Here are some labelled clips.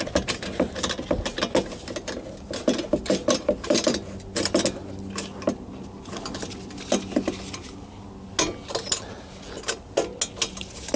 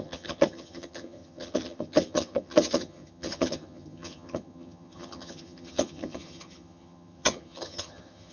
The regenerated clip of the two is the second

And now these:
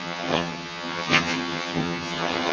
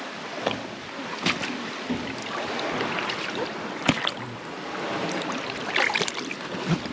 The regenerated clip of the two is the first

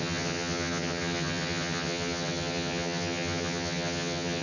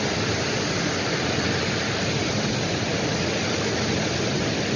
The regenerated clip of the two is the first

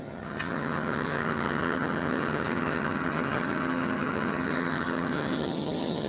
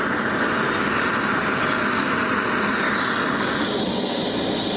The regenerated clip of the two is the first